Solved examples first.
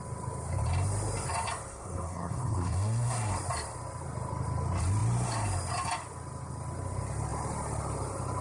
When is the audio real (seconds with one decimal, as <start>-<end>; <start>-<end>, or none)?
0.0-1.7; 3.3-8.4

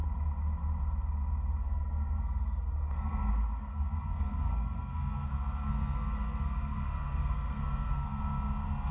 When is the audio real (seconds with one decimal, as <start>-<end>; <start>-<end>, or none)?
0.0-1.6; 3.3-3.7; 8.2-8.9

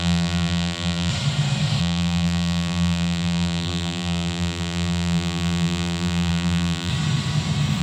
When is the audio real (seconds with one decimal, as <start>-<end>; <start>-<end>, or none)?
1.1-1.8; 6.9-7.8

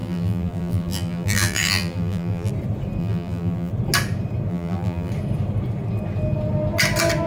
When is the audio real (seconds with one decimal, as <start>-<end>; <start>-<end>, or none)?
2.5-3.0; 3.7-4.5; 5.1-7.3